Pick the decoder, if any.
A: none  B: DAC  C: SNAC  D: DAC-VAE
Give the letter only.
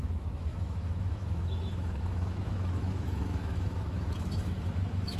D